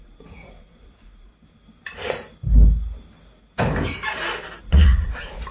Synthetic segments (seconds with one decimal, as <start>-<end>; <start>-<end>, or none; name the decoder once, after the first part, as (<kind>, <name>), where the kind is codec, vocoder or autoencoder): 0.0-1.3 (vocoder, Vocos); 4.6-5.5